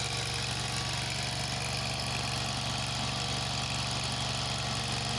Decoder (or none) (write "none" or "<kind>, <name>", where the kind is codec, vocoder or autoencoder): none